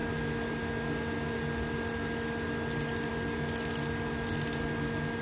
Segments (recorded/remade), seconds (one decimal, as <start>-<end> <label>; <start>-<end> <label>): 0.0-5.2 recorded